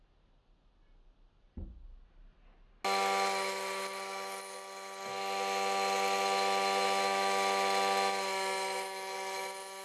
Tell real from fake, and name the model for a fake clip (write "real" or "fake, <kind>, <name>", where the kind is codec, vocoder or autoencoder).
real